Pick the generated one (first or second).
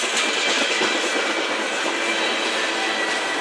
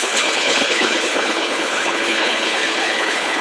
second